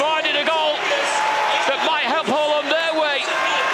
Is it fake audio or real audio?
real